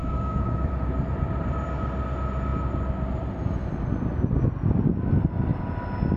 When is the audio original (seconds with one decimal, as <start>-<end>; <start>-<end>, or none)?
0.9-6.2